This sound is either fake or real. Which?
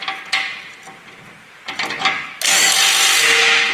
real